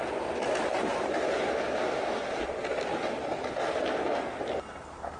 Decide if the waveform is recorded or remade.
recorded